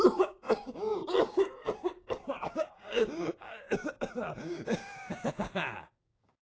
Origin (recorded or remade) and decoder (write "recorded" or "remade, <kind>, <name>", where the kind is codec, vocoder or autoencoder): remade, codec, DAC